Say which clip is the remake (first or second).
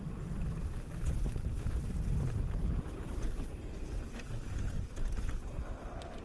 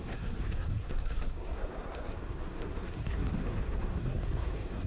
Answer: second